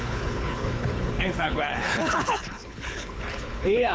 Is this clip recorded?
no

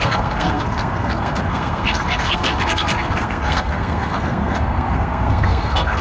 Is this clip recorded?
no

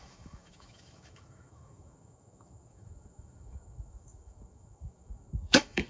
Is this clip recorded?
no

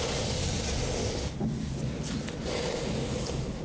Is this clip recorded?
yes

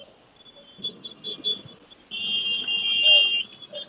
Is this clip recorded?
yes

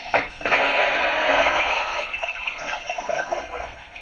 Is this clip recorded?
no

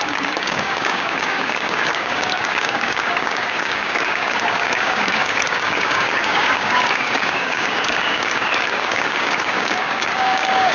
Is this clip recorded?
no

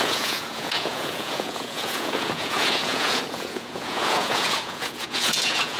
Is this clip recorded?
no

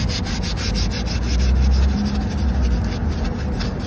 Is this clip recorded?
yes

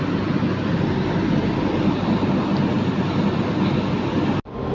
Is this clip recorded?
yes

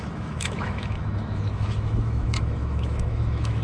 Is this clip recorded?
no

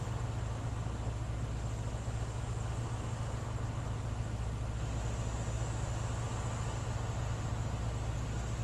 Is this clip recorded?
yes